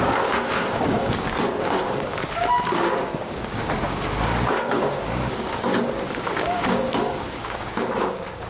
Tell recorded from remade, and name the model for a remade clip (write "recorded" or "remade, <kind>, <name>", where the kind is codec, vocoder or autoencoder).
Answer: remade, codec, DAC